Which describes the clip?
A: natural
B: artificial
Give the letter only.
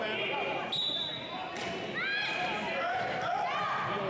A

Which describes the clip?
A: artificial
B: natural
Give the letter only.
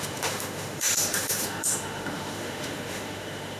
A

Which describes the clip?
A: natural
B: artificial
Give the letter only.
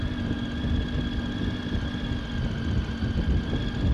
A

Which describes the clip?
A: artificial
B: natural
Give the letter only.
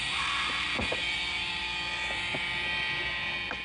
B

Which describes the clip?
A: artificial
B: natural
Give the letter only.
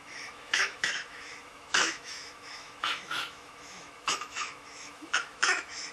A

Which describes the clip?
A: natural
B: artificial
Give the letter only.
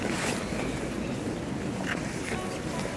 A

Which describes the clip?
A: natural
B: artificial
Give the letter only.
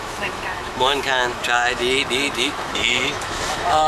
B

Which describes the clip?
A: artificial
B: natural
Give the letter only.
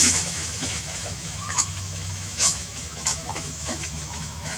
A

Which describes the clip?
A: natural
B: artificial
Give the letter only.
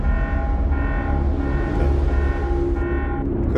A